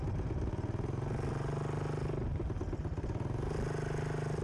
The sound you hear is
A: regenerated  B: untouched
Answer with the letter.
B